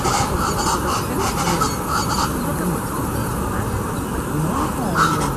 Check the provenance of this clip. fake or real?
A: real